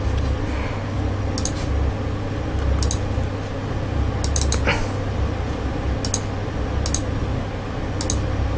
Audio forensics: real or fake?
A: real